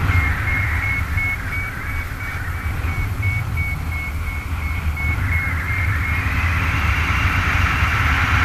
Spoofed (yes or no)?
no